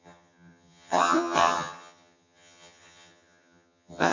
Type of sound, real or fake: fake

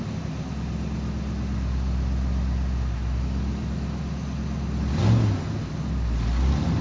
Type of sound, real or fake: real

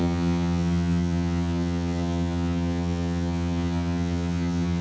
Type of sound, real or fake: fake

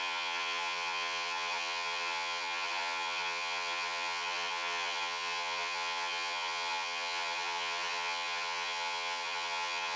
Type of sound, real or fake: fake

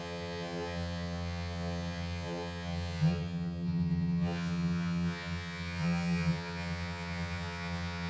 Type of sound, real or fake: fake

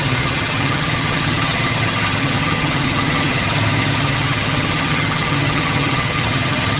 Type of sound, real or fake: fake